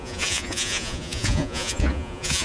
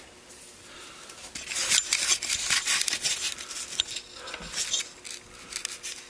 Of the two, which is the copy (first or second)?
first